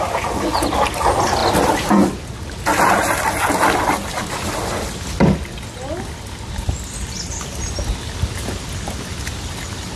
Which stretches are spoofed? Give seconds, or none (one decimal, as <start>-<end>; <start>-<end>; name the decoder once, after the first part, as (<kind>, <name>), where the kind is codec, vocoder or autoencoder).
none